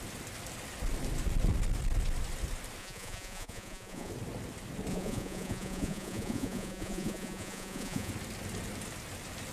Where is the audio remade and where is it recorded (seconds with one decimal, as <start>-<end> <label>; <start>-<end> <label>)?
0.0-2.8 recorded; 2.8-4.1 remade; 4.1-4.9 recorded; 4.9-8.1 remade; 8.1-9.5 recorded